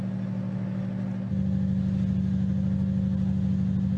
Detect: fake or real real